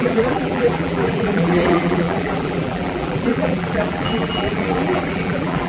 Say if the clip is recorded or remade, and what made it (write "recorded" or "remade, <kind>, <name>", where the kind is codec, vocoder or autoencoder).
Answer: remade, vocoder, BigVGAN v2